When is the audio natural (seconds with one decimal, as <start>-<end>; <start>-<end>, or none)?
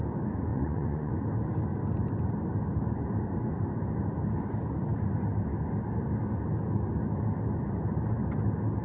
0.0-0.5; 1.1-8.8